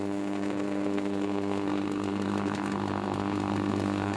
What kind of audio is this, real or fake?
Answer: fake